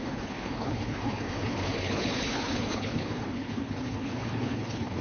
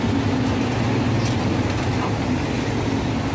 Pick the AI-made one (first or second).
first